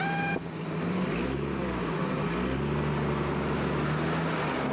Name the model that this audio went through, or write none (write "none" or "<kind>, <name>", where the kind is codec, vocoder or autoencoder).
none